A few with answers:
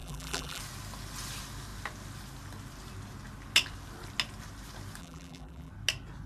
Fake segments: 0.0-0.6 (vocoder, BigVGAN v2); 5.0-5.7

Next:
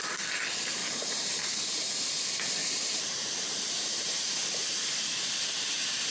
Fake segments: 0.8-1.9 (vocoder, BigVGAN v2); 2.6-5.0

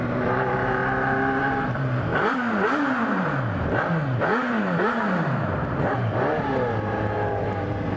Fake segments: 0.0-0.8 (vocoder, BigVGAN v2); 1.4-8.0